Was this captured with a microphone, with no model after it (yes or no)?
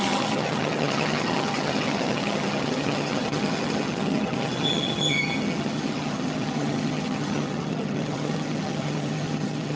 no